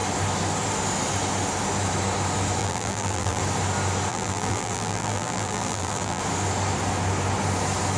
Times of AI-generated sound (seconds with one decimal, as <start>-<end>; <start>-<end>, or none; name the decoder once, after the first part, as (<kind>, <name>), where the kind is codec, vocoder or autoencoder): 2.6-3.4 (vocoder, BigVGAN v2); 4.1-6.2